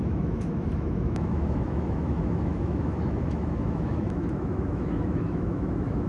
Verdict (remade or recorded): remade